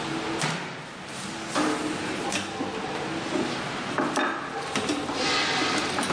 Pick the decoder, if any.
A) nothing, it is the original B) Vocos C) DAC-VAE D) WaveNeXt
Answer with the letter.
A